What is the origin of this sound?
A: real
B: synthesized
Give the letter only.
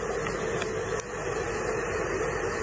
A